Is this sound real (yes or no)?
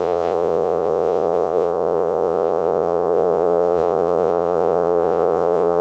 no